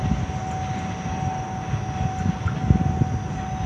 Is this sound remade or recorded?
recorded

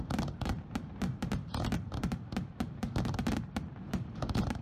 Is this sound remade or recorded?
remade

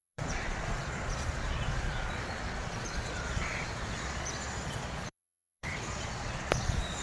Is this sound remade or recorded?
remade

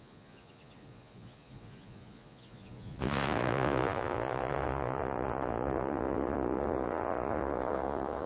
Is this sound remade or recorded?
remade